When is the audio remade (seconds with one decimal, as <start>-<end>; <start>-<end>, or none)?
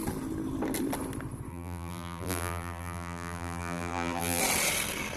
1.5-4.4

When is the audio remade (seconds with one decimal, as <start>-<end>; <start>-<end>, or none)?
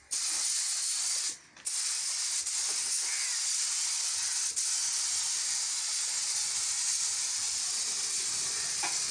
none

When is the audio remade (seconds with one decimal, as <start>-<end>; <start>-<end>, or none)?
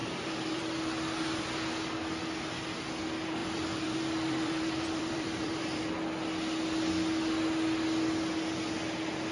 0.0-0.8; 3.4-5.9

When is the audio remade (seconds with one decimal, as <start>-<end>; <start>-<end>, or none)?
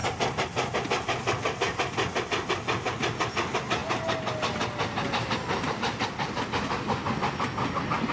none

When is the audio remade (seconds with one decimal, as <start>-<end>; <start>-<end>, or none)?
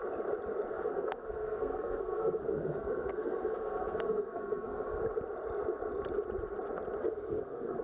0.7-5.0; 7.0-7.8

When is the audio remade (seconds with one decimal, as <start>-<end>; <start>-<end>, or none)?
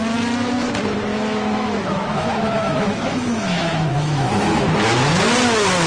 1.1-4.6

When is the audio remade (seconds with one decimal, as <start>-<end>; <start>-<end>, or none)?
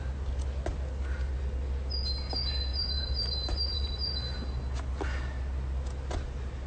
2.7-4.2